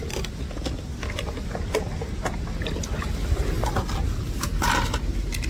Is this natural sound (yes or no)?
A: yes